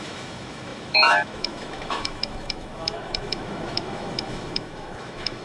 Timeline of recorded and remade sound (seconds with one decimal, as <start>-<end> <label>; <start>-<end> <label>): 0.0-5.4 remade